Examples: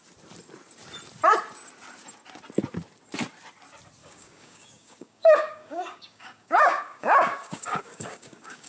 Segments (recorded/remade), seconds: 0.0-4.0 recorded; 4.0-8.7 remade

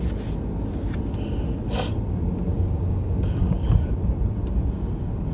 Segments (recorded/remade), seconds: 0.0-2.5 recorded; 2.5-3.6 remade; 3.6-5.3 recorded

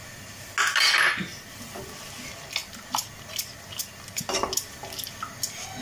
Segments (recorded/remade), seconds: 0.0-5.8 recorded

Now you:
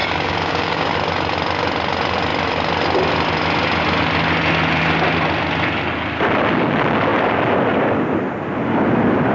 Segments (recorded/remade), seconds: 0.0-0.9 remade; 0.9-9.3 recorded